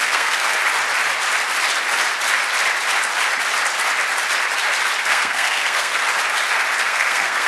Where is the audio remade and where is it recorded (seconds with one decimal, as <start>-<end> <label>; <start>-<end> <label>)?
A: 0.0-0.6 remade; 0.6-5.0 recorded; 5.0-6.0 remade; 6.0-6.8 recorded; 6.8-7.5 remade